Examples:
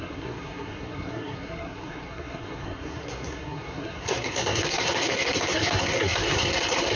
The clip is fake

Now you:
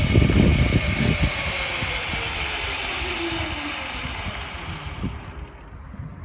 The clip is real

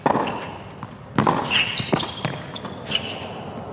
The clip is real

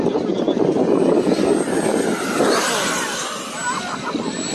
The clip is real